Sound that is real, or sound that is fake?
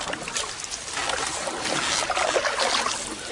real